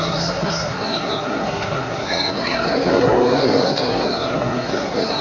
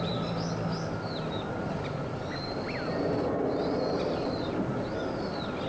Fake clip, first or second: first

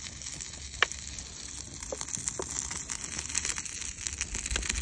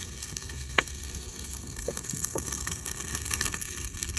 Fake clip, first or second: second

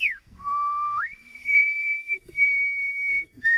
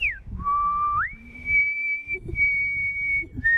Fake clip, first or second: first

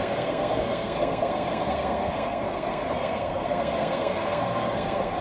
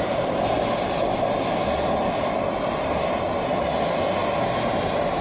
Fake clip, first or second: first